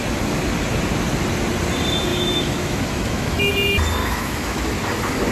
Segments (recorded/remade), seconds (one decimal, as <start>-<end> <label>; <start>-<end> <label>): 0.0-2.1 recorded; 2.1-3.5 remade; 3.5-4.0 recorded; 4.0-4.6 remade; 4.6-5.3 recorded